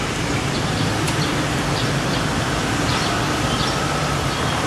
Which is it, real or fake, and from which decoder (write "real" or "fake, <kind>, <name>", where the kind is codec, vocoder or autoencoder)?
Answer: fake, vocoder, BigVGAN v2